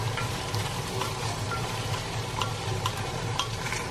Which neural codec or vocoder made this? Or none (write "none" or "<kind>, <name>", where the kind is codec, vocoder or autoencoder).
vocoder, BigVGAN v2